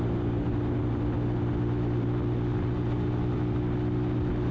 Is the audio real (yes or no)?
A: yes